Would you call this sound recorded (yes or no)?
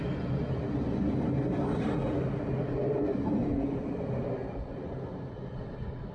yes